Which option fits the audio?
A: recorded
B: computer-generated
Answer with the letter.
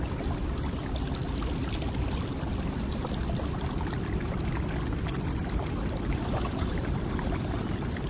A